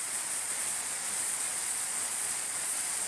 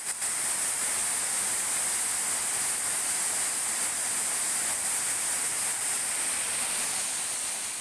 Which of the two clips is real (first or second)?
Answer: second